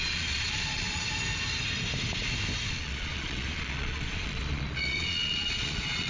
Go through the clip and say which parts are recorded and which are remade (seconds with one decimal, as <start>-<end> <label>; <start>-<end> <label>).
0.0-1.0 remade; 1.0-2.7 recorded; 2.7-6.1 remade